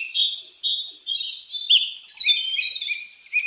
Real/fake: fake